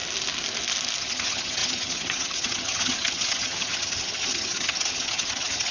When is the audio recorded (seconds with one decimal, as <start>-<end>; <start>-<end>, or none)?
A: 0.0-1.0